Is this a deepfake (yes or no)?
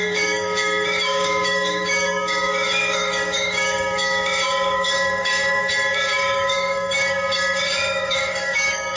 yes